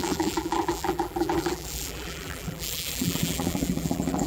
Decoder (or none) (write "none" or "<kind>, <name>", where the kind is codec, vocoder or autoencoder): vocoder, BigVGAN v2